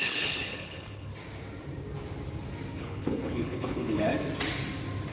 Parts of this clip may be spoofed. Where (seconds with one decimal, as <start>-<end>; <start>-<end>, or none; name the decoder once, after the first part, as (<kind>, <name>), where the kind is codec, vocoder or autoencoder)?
0.0-1.1 (codec, HILCodec); 2.8-4.1

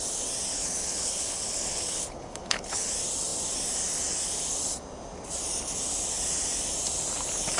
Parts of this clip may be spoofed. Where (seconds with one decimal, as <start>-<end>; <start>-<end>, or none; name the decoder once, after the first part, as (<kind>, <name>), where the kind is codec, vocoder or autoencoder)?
0.6-2.9 (codec, HILCodec)

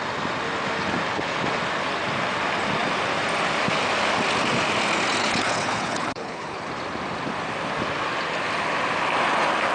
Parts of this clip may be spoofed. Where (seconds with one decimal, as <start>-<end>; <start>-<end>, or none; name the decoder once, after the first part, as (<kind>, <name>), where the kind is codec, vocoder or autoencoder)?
5.2-6.7 (codec, HILCodec)

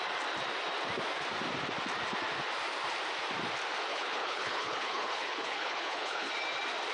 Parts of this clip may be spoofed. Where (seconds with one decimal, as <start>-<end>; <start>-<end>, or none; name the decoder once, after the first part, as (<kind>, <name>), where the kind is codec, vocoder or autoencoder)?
3.9-6.3 (codec, HILCodec)

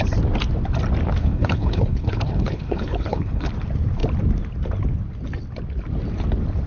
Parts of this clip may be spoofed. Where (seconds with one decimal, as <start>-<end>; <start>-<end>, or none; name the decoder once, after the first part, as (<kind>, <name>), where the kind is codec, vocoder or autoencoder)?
1.2-3.5 (codec, HILCodec)

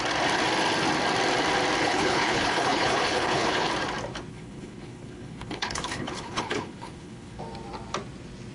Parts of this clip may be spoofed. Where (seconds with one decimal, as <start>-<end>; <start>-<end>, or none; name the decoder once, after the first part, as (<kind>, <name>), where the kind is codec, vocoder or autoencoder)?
1.8-3.7 (codec, HILCodec); 4.3-7.4

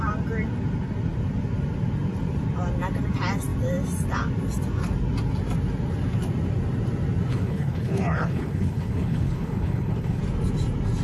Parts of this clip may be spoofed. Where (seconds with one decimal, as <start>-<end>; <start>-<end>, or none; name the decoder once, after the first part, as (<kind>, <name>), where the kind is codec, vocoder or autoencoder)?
7.3-10.2 (codec, HILCodec)